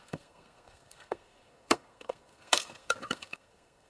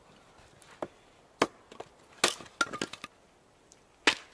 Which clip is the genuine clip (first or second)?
second